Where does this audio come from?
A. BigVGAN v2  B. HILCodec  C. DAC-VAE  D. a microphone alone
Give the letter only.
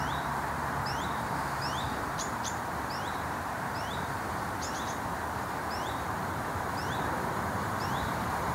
A